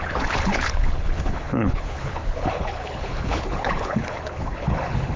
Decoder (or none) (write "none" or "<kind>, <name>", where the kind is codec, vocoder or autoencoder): codec, HILCodec